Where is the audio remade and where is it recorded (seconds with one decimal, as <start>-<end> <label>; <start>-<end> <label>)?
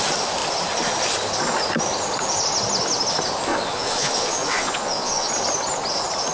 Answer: 0.0-3.5 recorded; 3.5-5.3 remade; 5.3-6.3 recorded